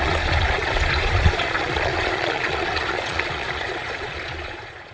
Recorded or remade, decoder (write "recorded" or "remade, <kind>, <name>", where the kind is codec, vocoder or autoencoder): remade, vocoder, Vocos